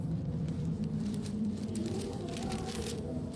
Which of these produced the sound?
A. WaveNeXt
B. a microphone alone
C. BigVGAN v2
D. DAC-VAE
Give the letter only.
C